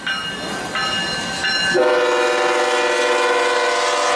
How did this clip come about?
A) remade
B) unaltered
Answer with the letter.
B